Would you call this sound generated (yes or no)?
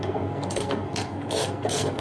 yes